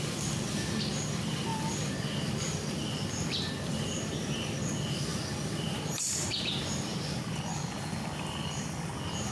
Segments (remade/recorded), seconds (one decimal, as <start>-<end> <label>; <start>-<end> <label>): 0.0-9.3 recorded